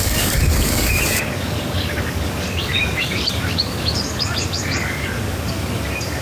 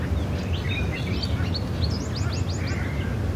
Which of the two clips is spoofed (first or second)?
first